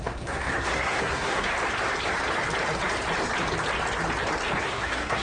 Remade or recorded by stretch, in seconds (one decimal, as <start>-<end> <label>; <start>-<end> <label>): 0.0-1.5 remade; 1.5-4.6 recorded; 4.6-5.2 remade